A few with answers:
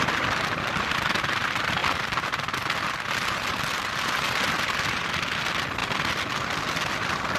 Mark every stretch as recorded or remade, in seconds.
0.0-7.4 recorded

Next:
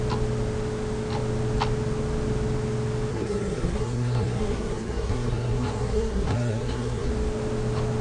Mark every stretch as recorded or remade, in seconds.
0.0-3.1 recorded; 3.1-7.1 remade; 7.1-8.0 recorded